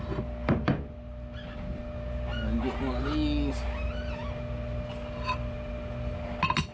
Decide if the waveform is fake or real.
real